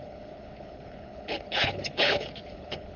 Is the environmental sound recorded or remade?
remade